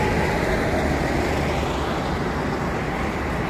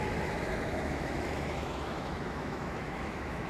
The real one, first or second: first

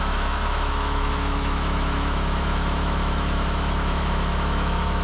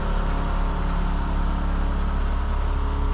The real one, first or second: second